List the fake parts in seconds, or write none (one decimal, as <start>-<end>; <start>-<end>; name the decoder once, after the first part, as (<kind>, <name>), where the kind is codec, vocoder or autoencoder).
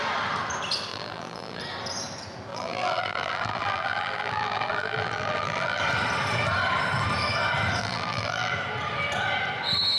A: 0.9-1.6 (vocoder, BigVGAN v2); 2.5-5.8; 7.8-8.5